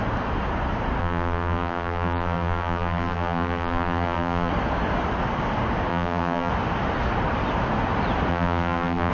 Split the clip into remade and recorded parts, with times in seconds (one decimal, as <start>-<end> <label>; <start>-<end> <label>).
0.0-1.0 recorded; 1.0-4.5 remade; 4.5-5.9 recorded; 5.9-6.5 remade; 6.5-8.3 recorded; 8.3-9.1 remade